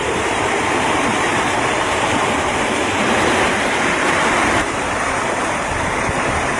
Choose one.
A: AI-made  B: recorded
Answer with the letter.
A